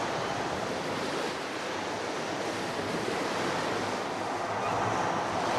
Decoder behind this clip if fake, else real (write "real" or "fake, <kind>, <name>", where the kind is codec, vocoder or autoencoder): real